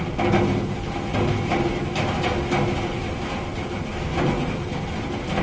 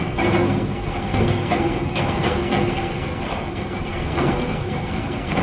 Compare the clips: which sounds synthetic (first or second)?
second